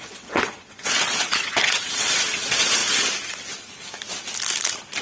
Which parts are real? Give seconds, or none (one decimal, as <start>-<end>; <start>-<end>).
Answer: 2.8-5.0